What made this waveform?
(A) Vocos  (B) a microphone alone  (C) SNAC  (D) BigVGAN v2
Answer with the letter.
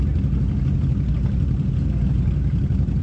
B